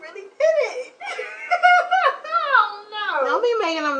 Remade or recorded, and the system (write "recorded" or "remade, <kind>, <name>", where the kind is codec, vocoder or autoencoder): recorded